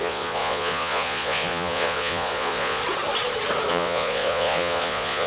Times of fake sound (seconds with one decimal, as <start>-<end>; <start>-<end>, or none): 0.0-2.8; 3.7-5.3